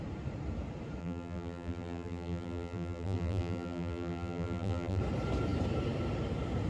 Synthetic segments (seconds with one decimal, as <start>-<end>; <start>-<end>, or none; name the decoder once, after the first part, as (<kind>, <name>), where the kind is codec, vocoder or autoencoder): 1.0-5.0 (vocoder, BigVGAN v2)